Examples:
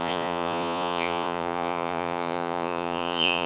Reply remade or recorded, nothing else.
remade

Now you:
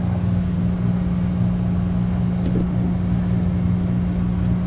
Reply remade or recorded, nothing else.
recorded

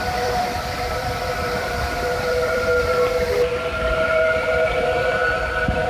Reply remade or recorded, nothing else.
remade